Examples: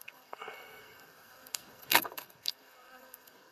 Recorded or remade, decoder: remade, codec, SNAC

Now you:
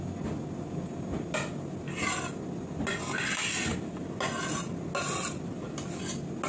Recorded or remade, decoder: recorded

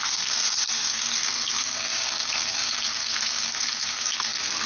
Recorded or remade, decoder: remade, codec, SNAC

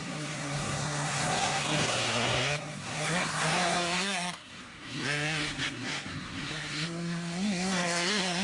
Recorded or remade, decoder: remade, codec, SNAC